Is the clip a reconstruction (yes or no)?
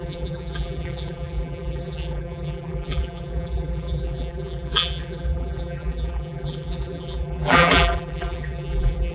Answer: yes